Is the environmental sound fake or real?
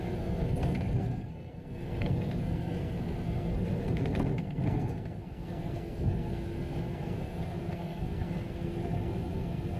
fake